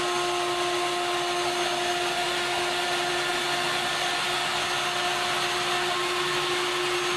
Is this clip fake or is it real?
real